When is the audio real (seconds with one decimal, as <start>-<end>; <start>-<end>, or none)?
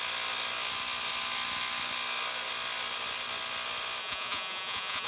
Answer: 0.0-4.0